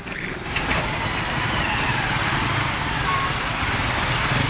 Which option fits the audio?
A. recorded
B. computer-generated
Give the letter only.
A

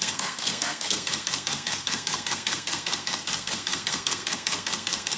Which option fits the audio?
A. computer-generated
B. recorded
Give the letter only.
A